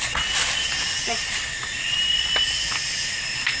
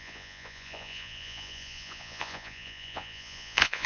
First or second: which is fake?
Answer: second